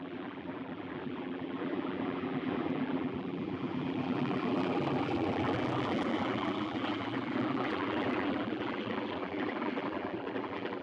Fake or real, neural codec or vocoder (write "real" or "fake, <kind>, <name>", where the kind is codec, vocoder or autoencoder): fake, vocoder, BigVGAN v2